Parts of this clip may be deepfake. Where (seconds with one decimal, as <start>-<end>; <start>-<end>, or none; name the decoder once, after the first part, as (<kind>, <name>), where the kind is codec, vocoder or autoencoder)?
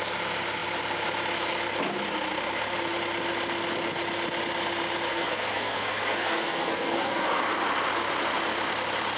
5.1-7.4 (codec, SNAC)